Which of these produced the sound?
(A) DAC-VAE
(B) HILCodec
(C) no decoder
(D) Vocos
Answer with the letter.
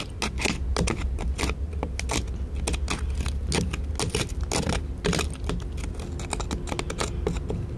C